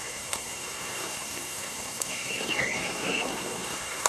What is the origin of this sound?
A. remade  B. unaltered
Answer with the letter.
A